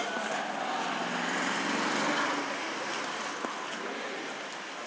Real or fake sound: real